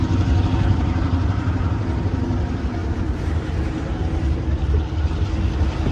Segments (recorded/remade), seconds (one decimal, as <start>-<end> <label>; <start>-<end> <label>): 0.0-0.8 recorded; 0.8-1.8 remade; 1.8-2.8 recorded; 2.8-5.9 remade